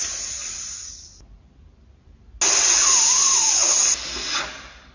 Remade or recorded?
recorded